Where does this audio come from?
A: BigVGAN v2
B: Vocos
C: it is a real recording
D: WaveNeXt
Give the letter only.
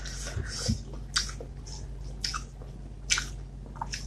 C